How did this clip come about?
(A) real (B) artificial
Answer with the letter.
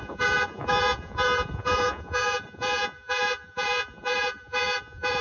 B